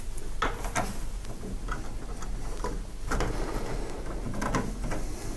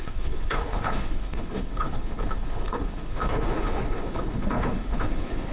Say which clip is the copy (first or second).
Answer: second